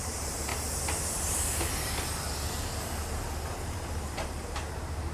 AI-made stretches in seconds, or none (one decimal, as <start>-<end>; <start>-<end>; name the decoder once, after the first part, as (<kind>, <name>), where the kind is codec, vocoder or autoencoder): 0.0-0.5 (vocoder, BigVGAN v2); 3.6-5.1